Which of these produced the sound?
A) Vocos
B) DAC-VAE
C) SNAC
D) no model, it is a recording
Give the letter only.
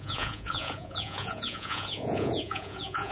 A